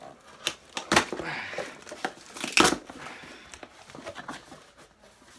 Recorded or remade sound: recorded